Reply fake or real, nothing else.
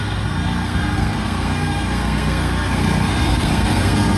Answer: fake